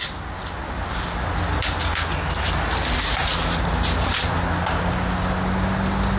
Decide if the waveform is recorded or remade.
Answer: recorded